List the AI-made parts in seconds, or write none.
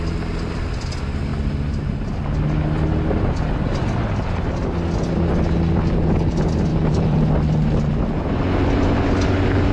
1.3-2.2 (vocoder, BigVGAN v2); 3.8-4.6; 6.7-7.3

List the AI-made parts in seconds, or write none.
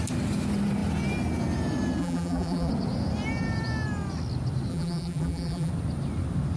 2.0-2.7 (vocoder, BigVGAN v2); 4.7-5.7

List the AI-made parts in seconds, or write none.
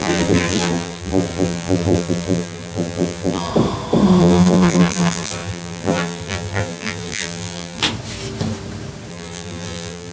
0.0-3.5 (vocoder, BigVGAN v2); 4.2-7.8; 9.1-10.1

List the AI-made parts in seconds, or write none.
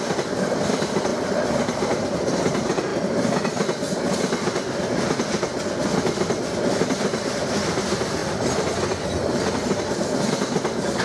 0.0-2.9 (vocoder, BigVGAN v2); 6.8-8.2; 9.8-11.0